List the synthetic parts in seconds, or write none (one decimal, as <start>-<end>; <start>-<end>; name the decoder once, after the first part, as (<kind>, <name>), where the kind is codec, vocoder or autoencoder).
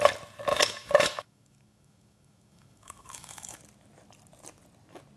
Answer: 0.5-3.6 (autoencoder, DAC-VAE)